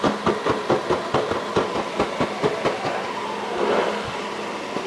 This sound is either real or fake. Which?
real